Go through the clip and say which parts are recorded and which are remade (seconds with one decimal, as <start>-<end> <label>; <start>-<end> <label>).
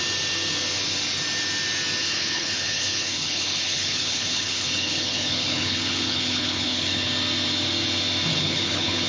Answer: 0.0-2.0 recorded; 2.0-7.1 remade; 7.1-8.3 recorded; 8.3-9.1 remade